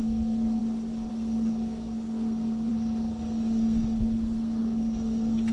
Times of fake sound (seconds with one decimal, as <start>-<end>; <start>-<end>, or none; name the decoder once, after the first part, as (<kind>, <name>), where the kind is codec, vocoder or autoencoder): 0.0-0.6 (codec, SNAC); 1.1-5.5